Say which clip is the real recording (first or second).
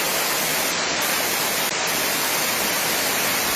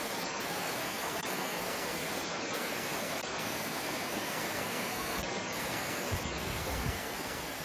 first